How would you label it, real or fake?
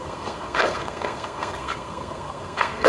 fake